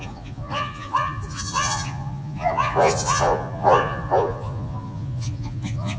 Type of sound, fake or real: fake